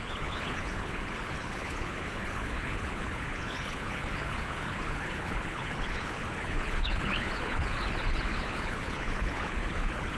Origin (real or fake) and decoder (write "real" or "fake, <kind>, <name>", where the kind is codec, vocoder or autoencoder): fake, codec, HILCodec